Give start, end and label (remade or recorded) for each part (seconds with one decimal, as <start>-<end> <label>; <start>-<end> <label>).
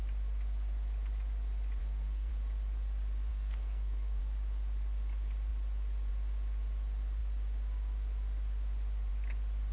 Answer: 0.0-1.8 recorded; 1.8-2.3 remade; 2.3-3.3 recorded; 3.3-4.2 remade; 4.2-9.7 recorded